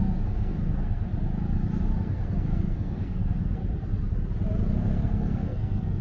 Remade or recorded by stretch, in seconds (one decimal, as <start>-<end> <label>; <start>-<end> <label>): 0.0-1.1 remade; 1.1-1.8 recorded; 1.8-3.6 remade; 3.6-4.7 recorded; 4.7-6.0 remade